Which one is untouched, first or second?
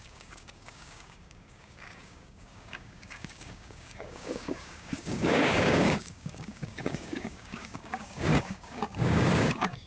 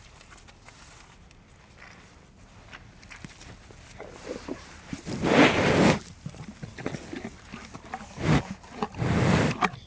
second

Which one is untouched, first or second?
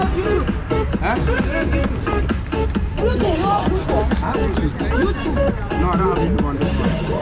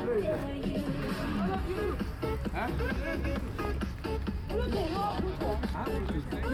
second